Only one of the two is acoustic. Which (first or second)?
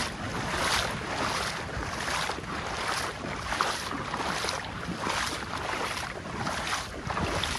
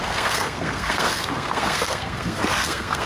first